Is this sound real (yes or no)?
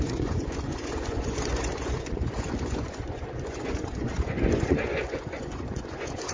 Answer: no